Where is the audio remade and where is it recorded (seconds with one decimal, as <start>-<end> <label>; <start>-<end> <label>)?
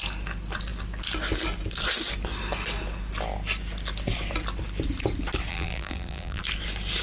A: 0.0-5.5 recorded; 5.5-6.4 remade; 6.4-7.0 recorded